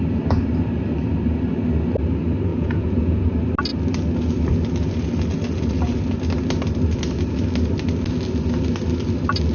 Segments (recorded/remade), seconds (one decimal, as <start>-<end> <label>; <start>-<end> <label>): 0.0-2.5 recorded; 2.5-3.3 remade; 3.3-9.5 recorded